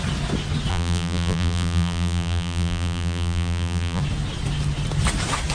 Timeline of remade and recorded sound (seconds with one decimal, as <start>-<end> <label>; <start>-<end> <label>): 0.0-0.7 recorded; 0.7-4.0 remade; 4.0-5.5 recorded